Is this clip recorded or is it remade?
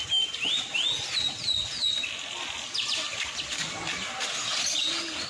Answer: recorded